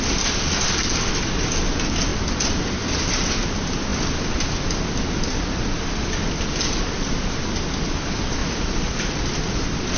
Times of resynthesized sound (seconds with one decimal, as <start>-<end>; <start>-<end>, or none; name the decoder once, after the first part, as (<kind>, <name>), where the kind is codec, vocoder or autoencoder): 8.4-9.2 (vocoder, Vocos)